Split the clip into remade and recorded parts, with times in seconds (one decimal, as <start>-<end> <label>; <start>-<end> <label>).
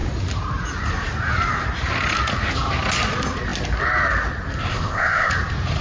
0.0-4.7 recorded; 4.7-5.3 remade; 5.3-5.8 recorded